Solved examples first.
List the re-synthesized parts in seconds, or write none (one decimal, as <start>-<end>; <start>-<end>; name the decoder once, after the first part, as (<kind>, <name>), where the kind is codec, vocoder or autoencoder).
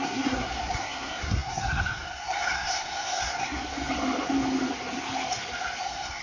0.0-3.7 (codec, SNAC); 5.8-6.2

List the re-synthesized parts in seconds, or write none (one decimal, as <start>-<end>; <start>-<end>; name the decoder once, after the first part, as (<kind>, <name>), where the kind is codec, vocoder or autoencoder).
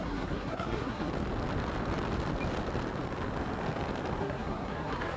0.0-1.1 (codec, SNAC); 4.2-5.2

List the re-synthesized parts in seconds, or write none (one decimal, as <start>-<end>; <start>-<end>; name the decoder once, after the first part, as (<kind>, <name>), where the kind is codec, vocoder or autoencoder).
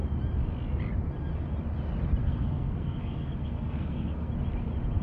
2.2-4.3 (codec, SNAC)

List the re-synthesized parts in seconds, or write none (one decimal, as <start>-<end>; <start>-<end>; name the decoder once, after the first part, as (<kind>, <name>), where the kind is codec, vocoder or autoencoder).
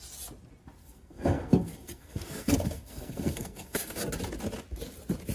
0.8-4.0 (codec, SNAC)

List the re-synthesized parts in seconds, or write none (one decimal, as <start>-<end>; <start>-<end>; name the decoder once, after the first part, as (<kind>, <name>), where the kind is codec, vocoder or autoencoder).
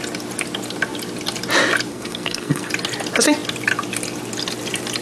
1.9-2.7 (codec, SNAC)